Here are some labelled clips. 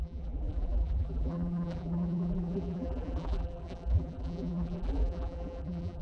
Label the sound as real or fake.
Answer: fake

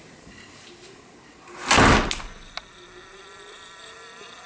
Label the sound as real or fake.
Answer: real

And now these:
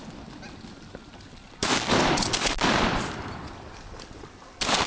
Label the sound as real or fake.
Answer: fake